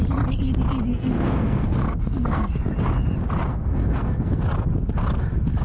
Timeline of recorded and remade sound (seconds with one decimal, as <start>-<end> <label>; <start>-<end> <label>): 0.0-0.9 recorded; 0.9-2.5 remade; 2.5-3.5 recorded; 3.5-4.4 remade; 4.4-5.6 recorded